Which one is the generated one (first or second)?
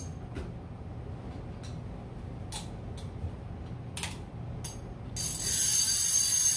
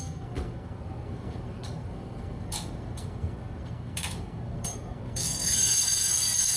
second